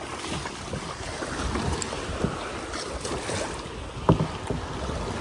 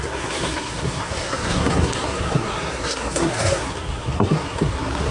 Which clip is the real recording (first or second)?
first